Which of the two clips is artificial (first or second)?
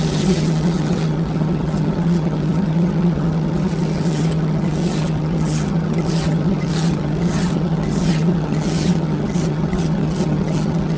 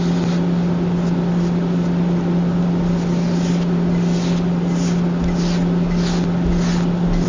first